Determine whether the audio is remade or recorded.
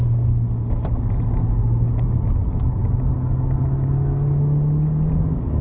recorded